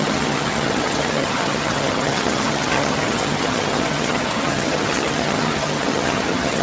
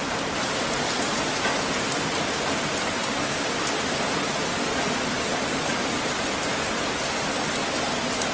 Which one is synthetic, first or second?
first